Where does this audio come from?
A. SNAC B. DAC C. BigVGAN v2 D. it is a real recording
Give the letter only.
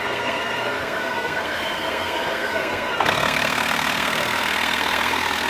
A